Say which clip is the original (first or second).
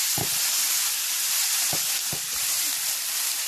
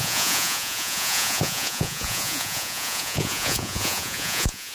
first